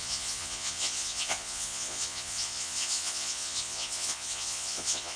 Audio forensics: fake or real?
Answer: fake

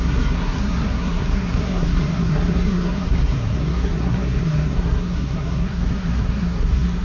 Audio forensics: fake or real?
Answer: fake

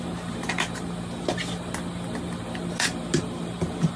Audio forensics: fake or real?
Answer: real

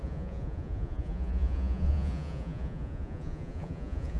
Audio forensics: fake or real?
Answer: fake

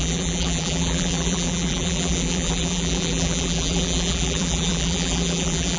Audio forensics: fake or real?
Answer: fake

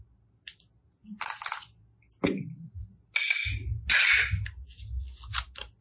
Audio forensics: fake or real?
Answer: real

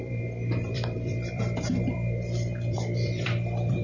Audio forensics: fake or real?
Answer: fake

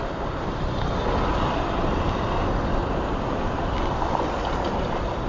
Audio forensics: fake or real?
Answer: real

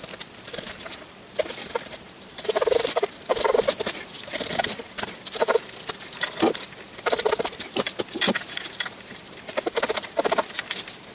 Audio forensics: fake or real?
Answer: fake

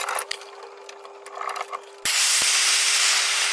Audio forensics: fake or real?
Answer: real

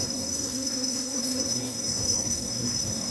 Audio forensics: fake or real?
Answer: fake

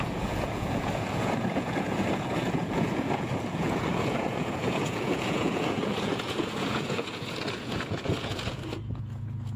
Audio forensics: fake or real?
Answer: fake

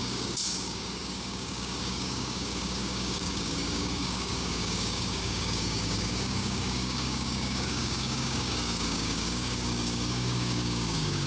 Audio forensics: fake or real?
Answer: fake